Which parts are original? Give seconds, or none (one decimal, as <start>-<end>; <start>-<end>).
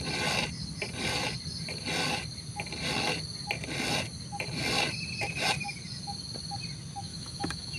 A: 0.0-7.1